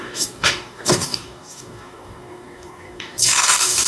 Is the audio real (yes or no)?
no